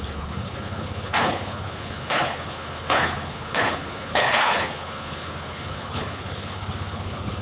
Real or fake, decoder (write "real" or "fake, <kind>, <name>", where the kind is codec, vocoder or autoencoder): fake, codec, HILCodec